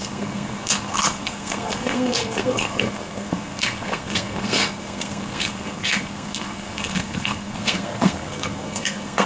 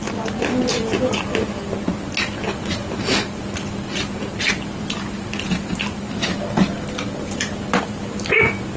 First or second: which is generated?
first